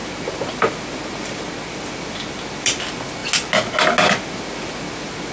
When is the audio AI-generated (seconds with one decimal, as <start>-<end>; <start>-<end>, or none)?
none